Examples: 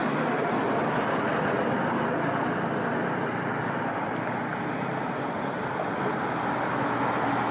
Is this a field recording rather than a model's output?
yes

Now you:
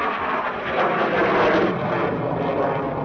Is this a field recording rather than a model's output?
yes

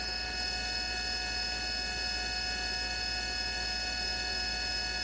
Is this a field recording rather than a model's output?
yes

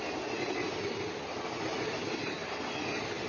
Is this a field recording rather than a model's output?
yes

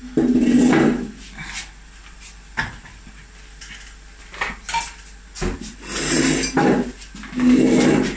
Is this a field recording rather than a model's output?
yes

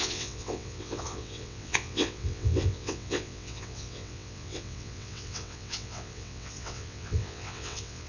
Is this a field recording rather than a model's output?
no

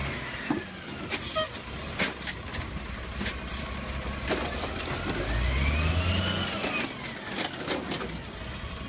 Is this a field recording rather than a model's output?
yes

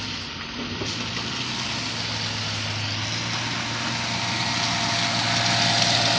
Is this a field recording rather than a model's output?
yes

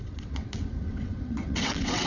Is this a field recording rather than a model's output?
no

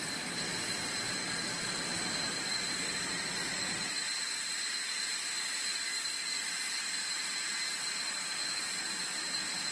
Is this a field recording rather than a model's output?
yes